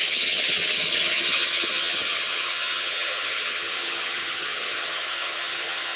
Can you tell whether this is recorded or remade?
remade